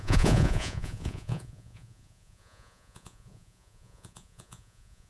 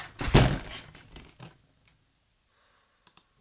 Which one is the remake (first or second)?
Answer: first